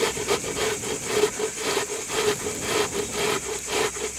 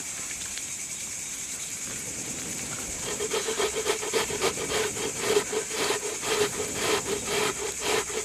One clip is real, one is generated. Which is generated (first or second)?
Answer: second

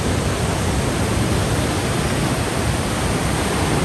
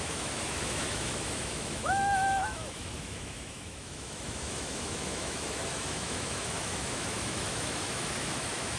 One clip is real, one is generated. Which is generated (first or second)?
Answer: second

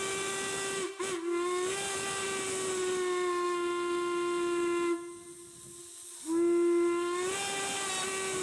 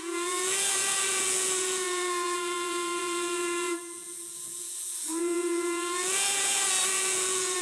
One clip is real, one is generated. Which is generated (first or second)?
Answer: second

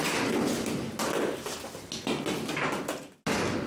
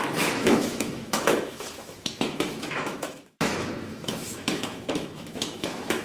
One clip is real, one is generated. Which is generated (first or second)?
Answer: second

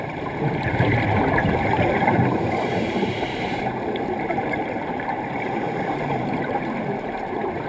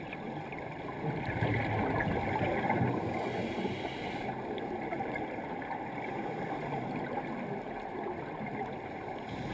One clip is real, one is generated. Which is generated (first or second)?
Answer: first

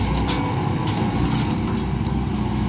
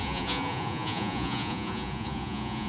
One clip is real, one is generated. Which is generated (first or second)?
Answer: second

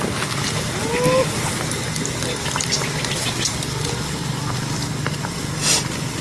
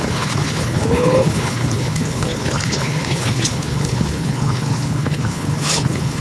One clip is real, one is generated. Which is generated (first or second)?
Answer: second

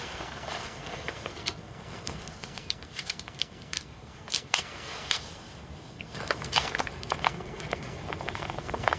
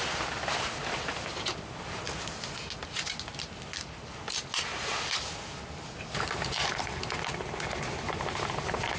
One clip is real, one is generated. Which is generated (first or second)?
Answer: first